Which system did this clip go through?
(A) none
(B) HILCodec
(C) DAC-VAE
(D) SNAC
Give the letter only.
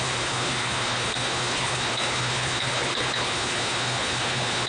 B